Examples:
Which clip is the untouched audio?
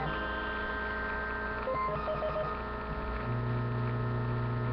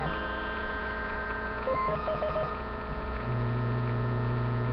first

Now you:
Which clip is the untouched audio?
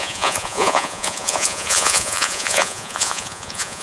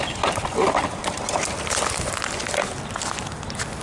second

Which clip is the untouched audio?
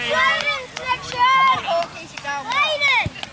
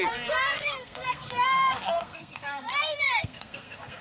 first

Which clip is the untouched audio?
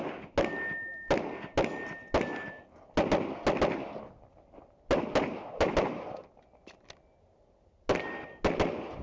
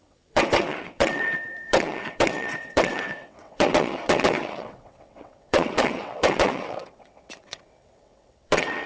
first